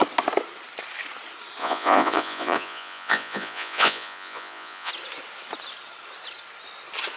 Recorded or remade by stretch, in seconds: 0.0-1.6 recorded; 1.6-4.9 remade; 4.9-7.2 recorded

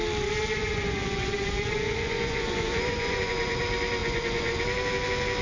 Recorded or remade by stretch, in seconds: 0.0-0.4 recorded; 0.4-3.6 remade; 3.6-4.0 recorded; 4.0-4.6 remade; 4.6-5.4 recorded

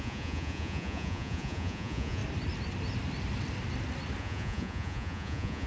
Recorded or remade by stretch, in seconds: 0.0-2.2 remade; 2.2-4.2 recorded; 4.2-5.7 remade